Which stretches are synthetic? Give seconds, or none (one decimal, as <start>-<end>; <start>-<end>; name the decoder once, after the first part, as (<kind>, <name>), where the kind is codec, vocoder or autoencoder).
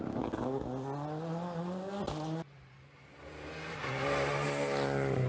none